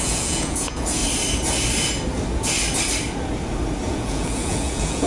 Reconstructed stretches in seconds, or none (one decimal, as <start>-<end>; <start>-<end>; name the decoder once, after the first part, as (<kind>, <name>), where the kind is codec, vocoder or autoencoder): 0.0-1.0 (vocoder, Vocos); 3.9-5.1